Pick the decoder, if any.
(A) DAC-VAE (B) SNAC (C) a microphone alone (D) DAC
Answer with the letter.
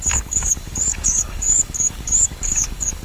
D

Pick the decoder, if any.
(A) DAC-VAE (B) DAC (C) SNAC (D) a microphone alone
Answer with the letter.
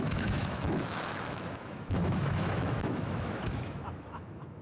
A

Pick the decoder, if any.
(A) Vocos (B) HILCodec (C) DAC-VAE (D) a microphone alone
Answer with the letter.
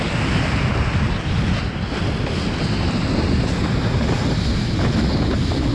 D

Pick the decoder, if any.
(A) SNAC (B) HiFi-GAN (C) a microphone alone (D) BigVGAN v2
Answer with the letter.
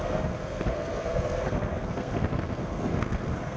A